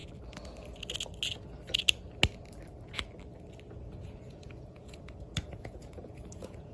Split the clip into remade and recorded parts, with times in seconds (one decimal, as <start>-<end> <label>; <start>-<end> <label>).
0.0-4.0 recorded; 4.0-6.7 remade